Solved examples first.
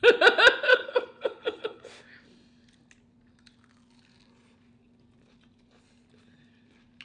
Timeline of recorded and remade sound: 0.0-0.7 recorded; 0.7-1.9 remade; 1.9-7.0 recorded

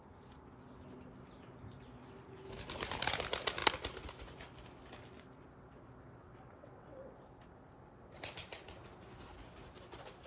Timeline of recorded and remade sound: 0.0-6.2 recorded; 6.2-7.0 remade; 7.0-10.3 recorded